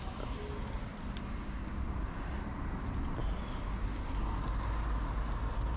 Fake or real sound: real